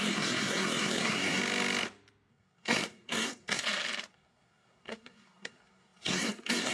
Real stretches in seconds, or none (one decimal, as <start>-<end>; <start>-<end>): 1.4-2.3; 3.6-4.1